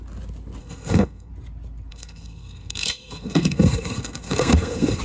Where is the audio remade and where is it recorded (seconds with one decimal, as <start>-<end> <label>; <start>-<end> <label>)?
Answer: 0.0-0.6 recorded; 0.6-1.3 remade; 1.3-1.9 recorded; 1.9-5.0 remade